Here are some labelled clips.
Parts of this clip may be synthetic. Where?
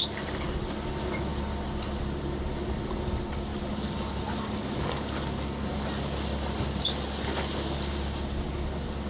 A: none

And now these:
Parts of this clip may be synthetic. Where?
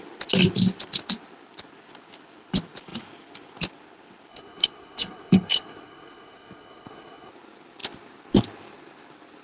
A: 4.3-7.3 (codec, HILCodec)